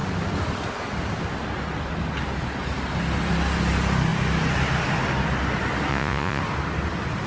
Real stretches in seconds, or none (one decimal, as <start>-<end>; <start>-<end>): 0.0-5.9; 6.4-7.3